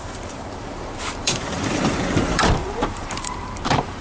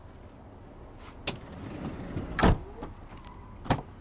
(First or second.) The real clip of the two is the second